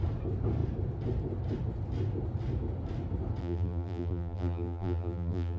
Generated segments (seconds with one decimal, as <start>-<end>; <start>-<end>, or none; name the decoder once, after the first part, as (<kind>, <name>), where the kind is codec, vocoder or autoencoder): 3.4-5.6 (vocoder, BigVGAN v2)